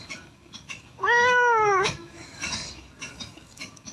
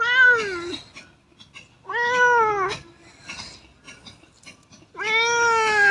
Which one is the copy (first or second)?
first